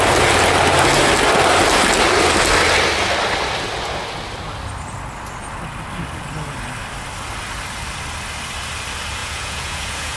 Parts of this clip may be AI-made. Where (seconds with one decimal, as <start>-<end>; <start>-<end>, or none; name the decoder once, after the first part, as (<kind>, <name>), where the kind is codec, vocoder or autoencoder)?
9.2-10.2 (vocoder, Vocos)